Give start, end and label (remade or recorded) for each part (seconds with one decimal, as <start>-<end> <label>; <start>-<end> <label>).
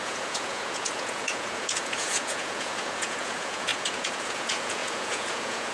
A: 0.0-5.7 remade